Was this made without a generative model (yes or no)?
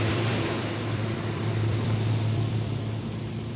no